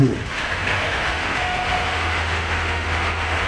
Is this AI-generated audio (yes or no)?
yes